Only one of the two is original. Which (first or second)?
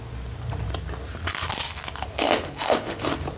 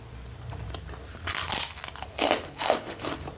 first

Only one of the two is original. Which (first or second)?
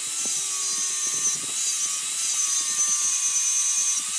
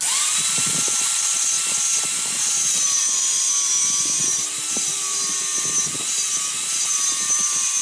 first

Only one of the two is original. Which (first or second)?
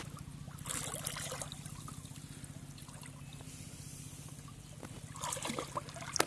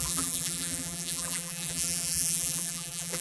first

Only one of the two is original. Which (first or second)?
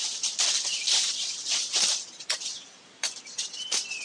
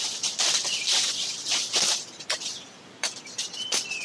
second